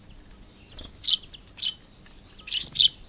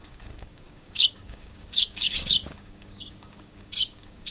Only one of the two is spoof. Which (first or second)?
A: second